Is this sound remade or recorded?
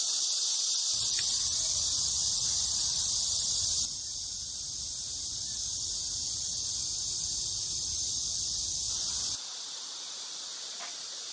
recorded